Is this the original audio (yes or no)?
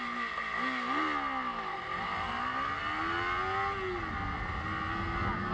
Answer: yes